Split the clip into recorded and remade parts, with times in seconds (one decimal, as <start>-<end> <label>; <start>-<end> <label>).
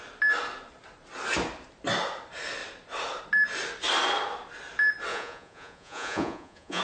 0.0-5.1 recorded; 5.1-6.8 remade